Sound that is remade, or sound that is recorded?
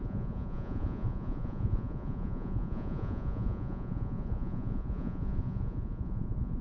remade